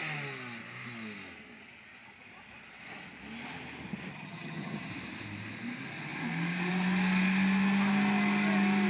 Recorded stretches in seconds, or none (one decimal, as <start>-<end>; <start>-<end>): 0.0-4.1; 4.9-8.9